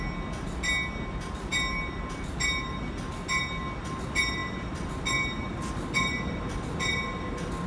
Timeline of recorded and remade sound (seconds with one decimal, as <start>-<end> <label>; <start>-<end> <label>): 0.0-7.7 recorded